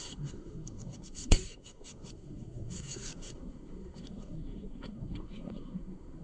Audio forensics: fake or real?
fake